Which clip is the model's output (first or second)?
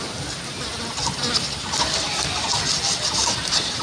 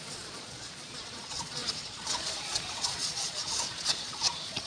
second